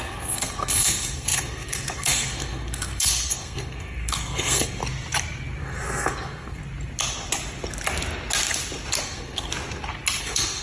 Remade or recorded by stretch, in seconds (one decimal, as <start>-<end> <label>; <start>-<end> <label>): 0.0-4.8 remade; 4.8-5.6 recorded; 5.6-6.6 remade; 6.6-9.0 recorded; 9.0-9.5 remade; 9.5-10.2 recorded; 10.2-10.6 remade